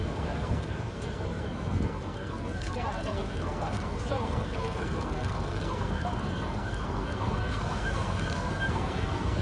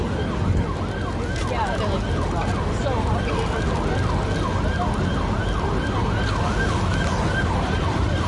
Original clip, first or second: second